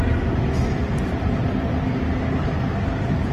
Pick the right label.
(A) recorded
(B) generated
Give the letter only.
A